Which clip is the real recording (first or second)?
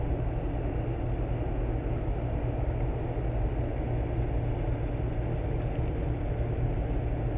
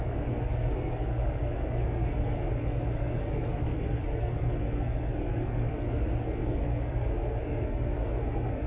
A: first